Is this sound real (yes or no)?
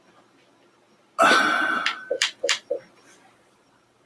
no